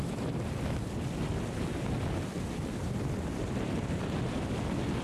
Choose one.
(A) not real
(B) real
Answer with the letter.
B